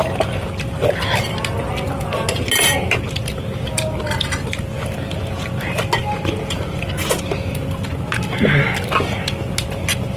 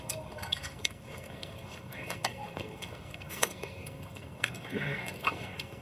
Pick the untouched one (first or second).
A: first